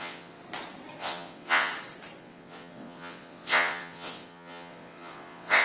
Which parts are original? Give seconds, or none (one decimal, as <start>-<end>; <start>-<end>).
0.4-1.0; 1.7-2.2